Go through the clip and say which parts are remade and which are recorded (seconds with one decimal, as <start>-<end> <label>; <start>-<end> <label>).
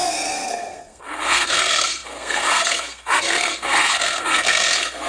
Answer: 0.0-5.1 remade